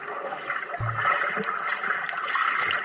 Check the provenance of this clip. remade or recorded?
recorded